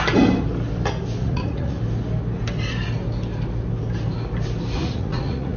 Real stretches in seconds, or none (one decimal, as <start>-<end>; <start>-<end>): 0.0-1.2; 1.8-4.8